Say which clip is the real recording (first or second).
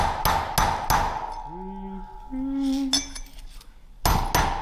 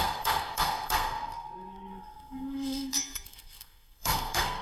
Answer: first